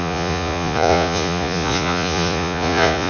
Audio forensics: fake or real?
fake